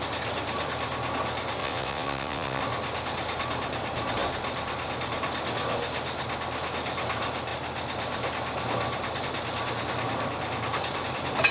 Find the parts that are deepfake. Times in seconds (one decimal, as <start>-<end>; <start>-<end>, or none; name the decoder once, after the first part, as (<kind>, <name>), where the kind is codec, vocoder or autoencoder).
1.6-2.6 (vocoder, WaveNeXt)